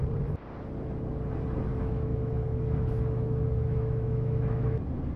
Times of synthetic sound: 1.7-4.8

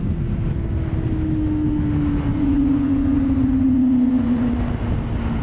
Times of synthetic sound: 2.3-4.5

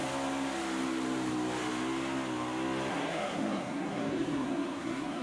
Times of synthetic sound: 2.9-5.2

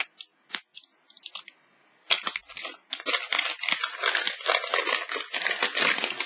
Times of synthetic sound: 0.7-1.5